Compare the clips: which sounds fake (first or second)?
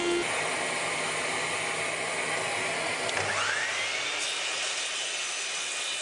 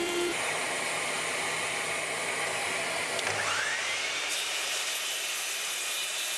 second